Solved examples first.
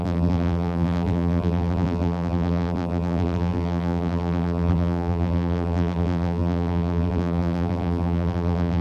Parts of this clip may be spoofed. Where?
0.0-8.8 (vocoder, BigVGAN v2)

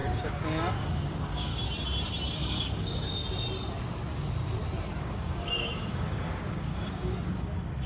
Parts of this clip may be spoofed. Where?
0.0-1.5 (codec, DAC); 2.4-3.2; 5.0-7.9

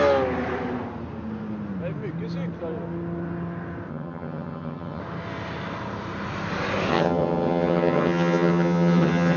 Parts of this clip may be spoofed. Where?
3.9-5.0 (vocoder, HiFi-GAN); 6.9-9.4